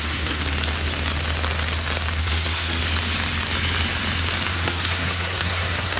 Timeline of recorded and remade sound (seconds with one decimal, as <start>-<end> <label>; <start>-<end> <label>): 0.0-0.4 remade; 0.4-2.2 recorded; 2.2-2.8 remade; 2.8-4.5 recorded; 4.5-6.0 remade